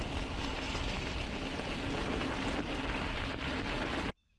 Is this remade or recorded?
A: recorded